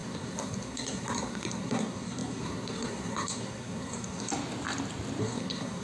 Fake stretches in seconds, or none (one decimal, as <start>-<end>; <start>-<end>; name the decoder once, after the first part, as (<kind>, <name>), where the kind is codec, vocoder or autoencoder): 0.0-4.3 (codec, SNAC); 5.2-5.8